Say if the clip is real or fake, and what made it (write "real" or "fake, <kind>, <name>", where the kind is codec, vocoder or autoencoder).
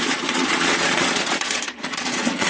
fake, vocoder, Vocos